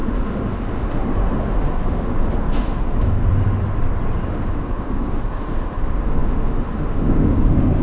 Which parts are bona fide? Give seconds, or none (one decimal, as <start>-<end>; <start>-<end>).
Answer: 3.2-4.3